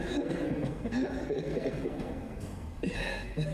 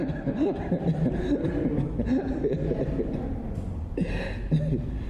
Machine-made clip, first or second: first